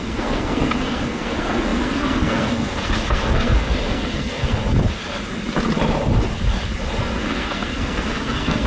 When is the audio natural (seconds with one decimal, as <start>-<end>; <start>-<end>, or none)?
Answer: 4.6-7.0